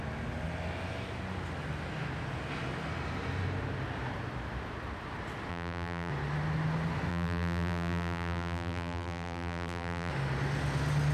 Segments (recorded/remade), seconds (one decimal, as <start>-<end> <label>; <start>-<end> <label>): 0.0-5.5 recorded; 5.5-6.1 remade; 6.1-7.1 recorded; 7.1-10.1 remade; 10.1-11.1 recorded